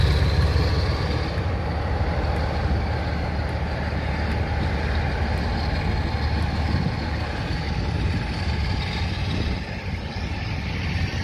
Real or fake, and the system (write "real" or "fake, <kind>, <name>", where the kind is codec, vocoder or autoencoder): real